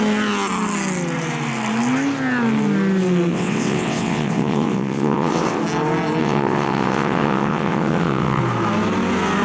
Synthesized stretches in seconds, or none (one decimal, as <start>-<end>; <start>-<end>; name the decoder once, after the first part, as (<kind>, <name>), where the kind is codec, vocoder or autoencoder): 3.3-5.6 (vocoder, WaveNeXt); 6.2-8.4